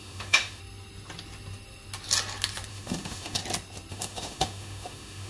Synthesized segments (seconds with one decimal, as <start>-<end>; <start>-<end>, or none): 0.0-0.6; 2.7-3.4; 3.9-5.3